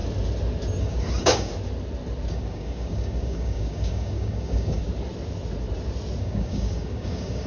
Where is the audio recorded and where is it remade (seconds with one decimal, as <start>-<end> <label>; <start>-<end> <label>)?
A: 0.0-0.8 recorded; 0.8-1.5 remade; 1.5-2.3 recorded; 2.3-4.8 remade; 4.8-6.2 recorded; 6.2-7.5 remade